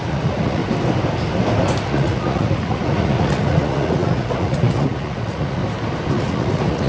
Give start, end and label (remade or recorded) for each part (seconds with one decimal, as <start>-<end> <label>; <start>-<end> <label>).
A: 0.0-0.6 remade; 0.6-1.9 recorded; 1.9-5.6 remade; 5.6-6.1 recorded; 6.1-6.9 remade